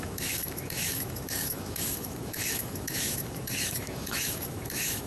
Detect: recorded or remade remade